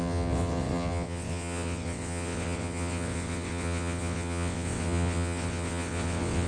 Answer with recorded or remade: remade